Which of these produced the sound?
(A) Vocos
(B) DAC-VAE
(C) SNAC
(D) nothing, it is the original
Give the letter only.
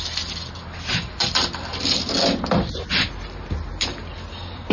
D